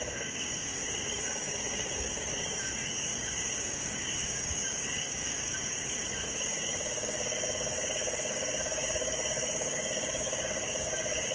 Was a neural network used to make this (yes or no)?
yes